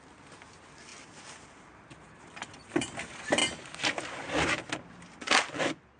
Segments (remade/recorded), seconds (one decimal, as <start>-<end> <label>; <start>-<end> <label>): 0.0-6.0 recorded